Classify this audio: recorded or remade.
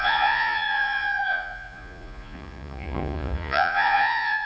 remade